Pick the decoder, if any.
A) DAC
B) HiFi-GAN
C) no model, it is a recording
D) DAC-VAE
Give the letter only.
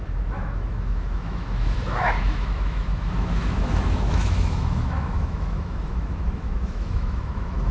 D